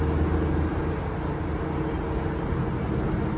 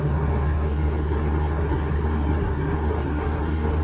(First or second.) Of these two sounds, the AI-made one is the second